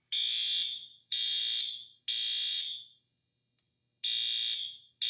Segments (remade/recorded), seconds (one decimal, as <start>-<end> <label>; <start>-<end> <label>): 0.0-0.9 recorded; 0.9-1.4 remade; 1.4-2.5 recorded; 2.5-3.8 remade; 3.8-5.1 recorded